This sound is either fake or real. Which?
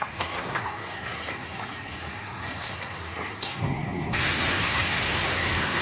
fake